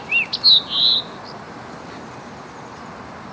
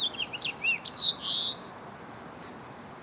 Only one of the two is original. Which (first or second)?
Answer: first